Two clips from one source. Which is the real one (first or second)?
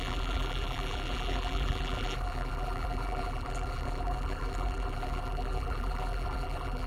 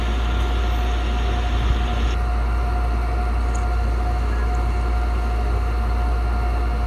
second